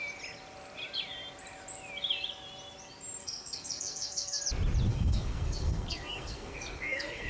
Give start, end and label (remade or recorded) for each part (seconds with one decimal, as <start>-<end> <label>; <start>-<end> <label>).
0.0-3.2 recorded; 3.2-4.4 remade; 4.4-4.9 recorded; 4.9-7.3 remade